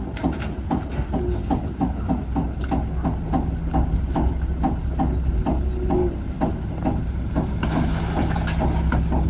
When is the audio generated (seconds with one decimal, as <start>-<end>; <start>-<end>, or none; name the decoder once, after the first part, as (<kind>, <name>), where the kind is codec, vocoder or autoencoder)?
none